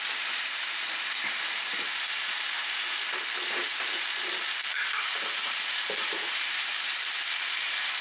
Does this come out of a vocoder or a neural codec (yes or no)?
yes